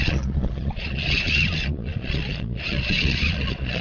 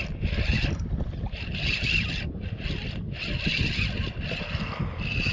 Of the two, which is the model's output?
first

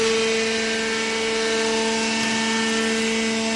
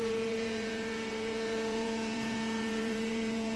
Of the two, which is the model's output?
second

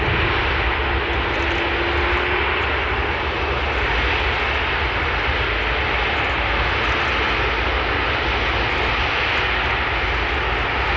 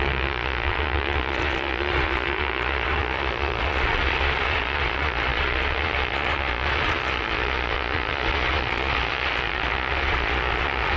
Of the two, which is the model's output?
second